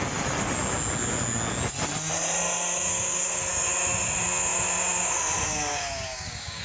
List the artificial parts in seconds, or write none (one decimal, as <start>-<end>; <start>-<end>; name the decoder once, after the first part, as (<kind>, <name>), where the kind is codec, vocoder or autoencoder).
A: 2.9-3.4 (codec, DAC); 5.7-6.6